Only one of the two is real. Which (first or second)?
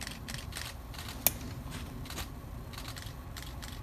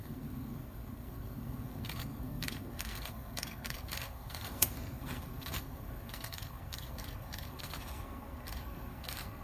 first